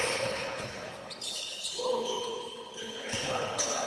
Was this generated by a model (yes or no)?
yes